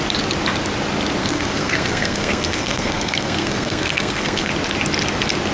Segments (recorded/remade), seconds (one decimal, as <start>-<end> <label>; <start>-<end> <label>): 0.0-1.2 recorded; 1.2-4.5 remade; 4.5-5.5 recorded